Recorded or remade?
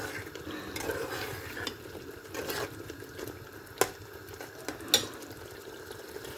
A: recorded